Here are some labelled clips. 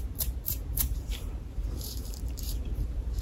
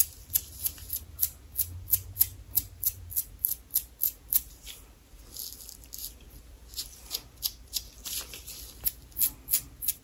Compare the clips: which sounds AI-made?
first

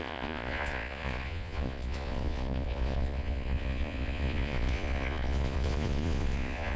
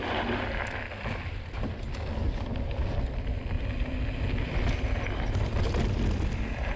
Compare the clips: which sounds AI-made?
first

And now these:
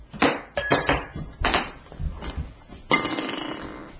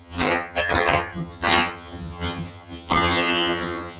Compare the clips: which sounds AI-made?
second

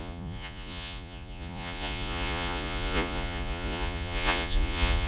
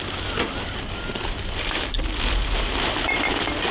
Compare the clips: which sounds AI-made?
first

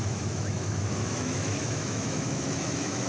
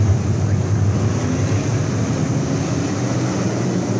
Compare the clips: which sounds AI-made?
first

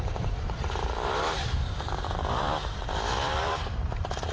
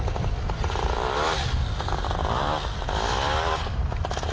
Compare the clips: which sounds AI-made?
first